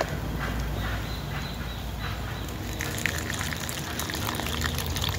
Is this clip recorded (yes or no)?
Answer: no